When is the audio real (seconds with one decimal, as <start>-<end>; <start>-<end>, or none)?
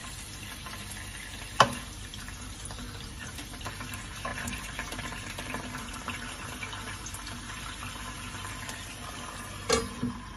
0.0-2.1; 2.6-4.3; 7.6-10.4